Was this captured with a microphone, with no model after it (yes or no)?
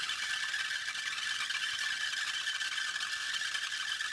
no